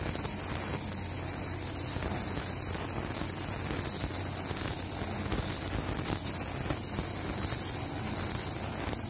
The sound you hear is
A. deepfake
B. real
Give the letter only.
B